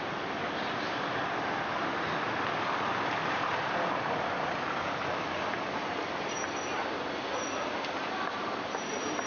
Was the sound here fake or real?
real